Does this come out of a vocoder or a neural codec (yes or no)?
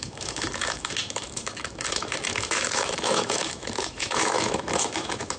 yes